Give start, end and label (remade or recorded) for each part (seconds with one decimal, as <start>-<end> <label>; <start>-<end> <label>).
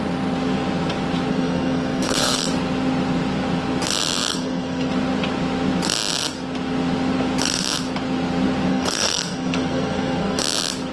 0.0-1.3 recorded; 1.3-2.5 remade; 2.5-4.3 recorded; 4.3-4.9 remade; 4.9-8.7 recorded; 8.7-10.4 remade; 10.4-10.9 recorded